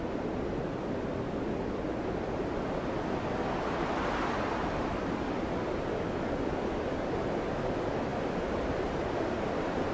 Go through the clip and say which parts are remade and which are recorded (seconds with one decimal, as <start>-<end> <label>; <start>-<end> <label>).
0.0-9.9 recorded